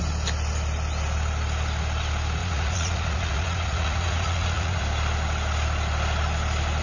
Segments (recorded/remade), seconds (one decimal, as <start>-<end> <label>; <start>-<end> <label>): 0.0-2.4 recorded; 2.4-4.8 remade; 4.8-6.8 recorded